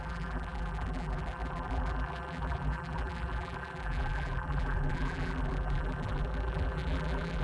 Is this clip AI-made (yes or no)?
yes